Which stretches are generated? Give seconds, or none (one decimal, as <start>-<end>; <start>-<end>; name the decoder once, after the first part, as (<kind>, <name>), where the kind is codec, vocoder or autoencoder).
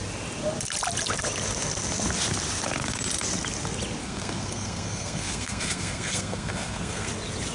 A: 4.0-7.1 (codec, SNAC)